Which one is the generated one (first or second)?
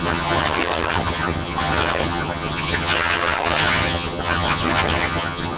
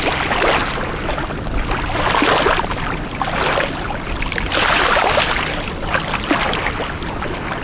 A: first